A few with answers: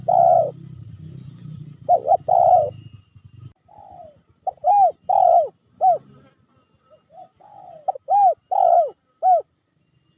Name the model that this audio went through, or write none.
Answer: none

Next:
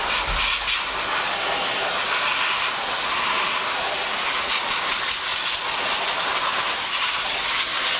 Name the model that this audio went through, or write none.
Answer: none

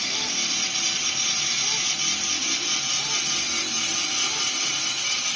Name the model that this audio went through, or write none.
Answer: none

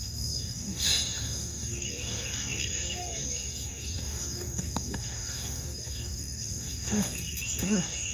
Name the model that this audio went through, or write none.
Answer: codec, DAC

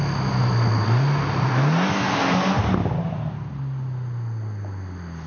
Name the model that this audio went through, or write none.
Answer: none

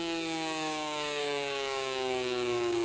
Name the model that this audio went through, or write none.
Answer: codec, DAC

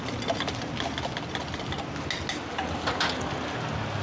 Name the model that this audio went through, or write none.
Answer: none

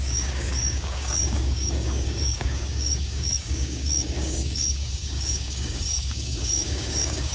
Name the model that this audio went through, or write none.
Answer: codec, DAC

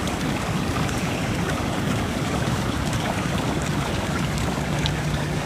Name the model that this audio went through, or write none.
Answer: codec, DAC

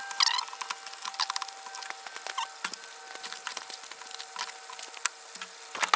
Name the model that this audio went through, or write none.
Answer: none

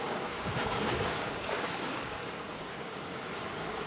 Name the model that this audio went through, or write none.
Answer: codec, DAC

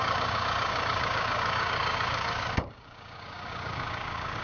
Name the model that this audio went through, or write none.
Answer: codec, DAC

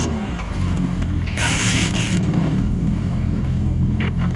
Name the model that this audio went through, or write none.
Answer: codec, DAC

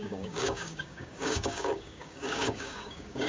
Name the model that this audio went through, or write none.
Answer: codec, DAC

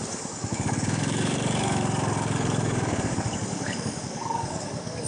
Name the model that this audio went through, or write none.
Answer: codec, DAC